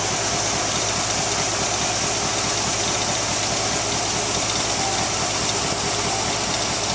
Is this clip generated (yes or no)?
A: no